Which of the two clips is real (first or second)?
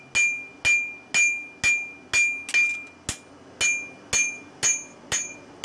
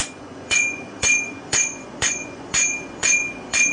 first